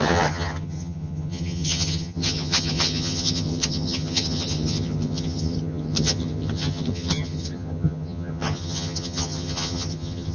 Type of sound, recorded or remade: remade